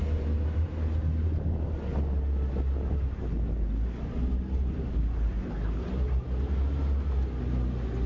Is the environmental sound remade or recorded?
recorded